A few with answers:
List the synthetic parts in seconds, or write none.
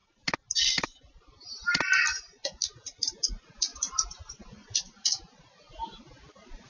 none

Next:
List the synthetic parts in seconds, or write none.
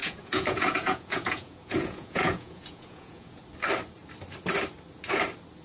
0.0-3.4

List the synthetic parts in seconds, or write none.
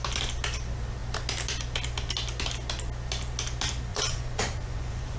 3.9-5.2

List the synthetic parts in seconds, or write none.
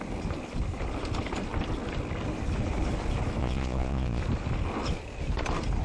3.4-4.2